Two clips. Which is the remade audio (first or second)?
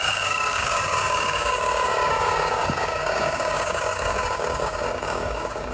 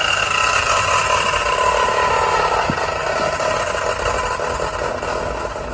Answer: first